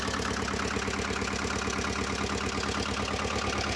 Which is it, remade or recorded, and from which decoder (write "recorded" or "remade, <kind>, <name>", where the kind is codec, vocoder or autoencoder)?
recorded